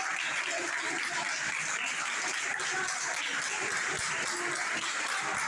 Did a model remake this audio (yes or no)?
no